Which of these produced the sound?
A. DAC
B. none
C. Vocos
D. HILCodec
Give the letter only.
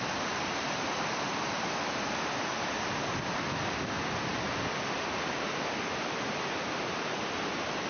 B